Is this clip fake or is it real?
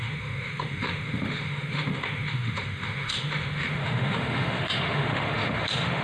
fake